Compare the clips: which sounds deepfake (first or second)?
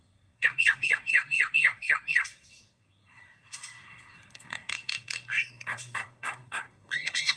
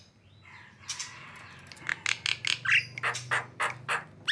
first